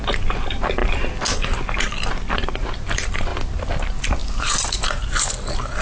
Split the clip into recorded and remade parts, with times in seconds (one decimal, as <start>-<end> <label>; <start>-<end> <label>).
0.0-5.8 recorded